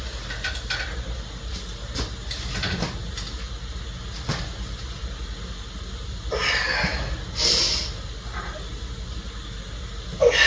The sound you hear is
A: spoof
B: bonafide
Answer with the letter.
B